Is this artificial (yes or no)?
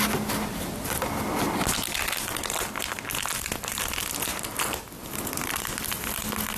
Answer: no